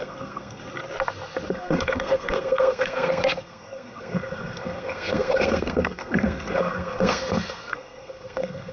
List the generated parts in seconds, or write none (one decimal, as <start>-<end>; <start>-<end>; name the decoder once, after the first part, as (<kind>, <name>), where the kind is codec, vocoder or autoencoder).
0.0-0.6 (codec, SNAC); 1.5-8.7

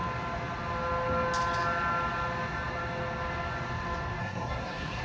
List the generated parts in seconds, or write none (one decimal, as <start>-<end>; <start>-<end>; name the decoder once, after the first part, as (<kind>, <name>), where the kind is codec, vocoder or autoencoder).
4.2-5.0 (codec, SNAC)

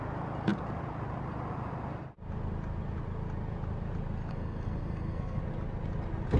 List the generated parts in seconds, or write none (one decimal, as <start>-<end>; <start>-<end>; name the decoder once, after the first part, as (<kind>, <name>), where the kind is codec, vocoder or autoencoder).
4.3-5.4 (codec, SNAC)

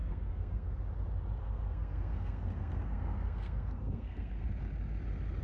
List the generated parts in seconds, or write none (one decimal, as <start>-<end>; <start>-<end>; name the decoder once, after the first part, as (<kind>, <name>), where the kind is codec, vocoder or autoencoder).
0.0-0.8 (codec, SNAC); 1.4-4.6

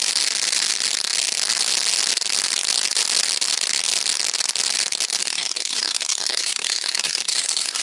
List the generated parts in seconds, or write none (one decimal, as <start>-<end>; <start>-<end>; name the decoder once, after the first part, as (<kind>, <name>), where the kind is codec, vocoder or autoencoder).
5.2-7.8 (codec, SNAC)

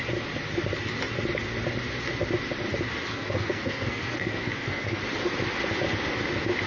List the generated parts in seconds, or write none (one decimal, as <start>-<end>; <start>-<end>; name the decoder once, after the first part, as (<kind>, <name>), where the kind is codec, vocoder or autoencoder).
3.1-5.0 (codec, SNAC)

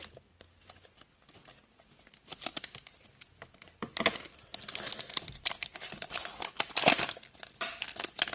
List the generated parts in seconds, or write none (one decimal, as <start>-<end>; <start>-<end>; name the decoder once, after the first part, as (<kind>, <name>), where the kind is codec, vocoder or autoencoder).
none